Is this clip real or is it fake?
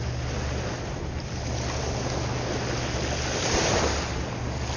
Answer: real